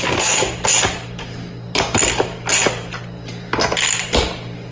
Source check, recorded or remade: recorded